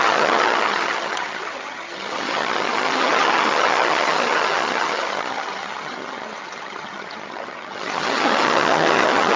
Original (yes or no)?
no